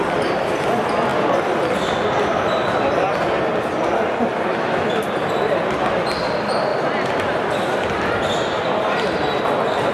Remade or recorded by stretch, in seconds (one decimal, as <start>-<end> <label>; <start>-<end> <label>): 0.0-4.5 recorded; 4.5-5.0 remade; 5.0-9.9 recorded